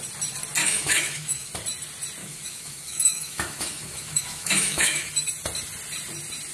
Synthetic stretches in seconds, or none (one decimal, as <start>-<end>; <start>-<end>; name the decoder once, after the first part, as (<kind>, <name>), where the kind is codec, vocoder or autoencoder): 0.6-1.5 (autoencoder, DAC-VAE); 2.2-5.1